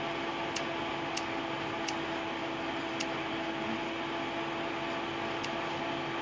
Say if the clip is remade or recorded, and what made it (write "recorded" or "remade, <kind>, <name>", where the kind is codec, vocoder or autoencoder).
recorded